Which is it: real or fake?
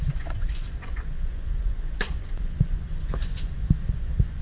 fake